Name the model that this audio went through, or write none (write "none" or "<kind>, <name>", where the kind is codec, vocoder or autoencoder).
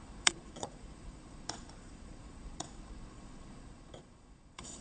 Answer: vocoder, Vocos